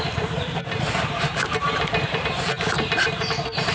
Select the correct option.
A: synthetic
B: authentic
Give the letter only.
A